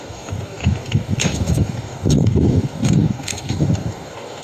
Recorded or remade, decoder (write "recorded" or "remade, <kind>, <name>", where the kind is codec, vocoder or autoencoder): remade, codec, DAC